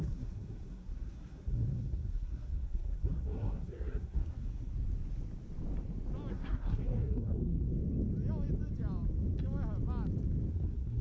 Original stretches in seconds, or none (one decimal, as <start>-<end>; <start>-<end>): 4.7-6.3; 7.7-10.5